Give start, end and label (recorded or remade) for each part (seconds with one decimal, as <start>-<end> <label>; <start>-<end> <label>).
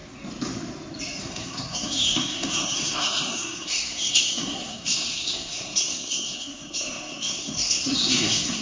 0.0-1.2 recorded; 1.2-8.6 remade